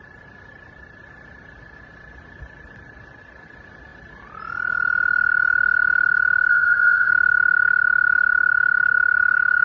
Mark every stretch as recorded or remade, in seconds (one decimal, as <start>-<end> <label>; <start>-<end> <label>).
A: 0.0-6.5 recorded; 6.5-7.1 remade; 7.1-9.6 recorded